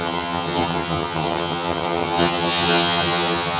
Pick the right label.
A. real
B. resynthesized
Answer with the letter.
B